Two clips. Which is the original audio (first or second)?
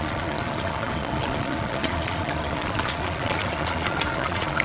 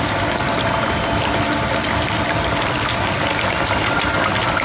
second